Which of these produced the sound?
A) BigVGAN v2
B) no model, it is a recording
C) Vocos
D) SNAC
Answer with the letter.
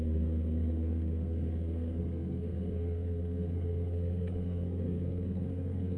D